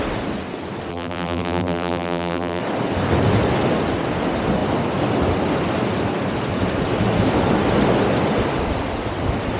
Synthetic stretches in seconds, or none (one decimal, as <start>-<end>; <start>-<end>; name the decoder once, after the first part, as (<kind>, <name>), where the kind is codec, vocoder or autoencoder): 0.9-2.6 (vocoder, BigVGAN v2)